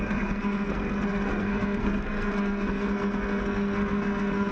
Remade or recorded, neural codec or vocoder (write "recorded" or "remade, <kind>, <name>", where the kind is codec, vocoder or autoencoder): remade, codec, SNAC